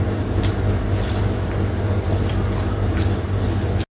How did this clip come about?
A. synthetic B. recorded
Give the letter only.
B